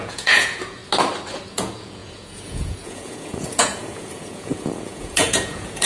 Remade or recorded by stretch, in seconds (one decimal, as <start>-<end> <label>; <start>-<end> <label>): 0.0-0.8 remade; 0.8-1.5 recorded; 1.5-5.9 remade